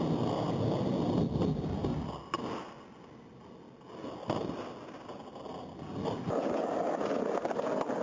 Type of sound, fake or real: real